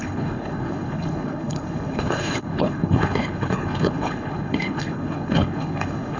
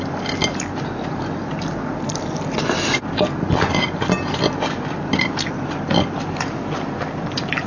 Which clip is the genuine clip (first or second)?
second